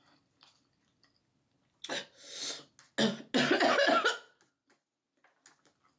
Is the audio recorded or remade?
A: recorded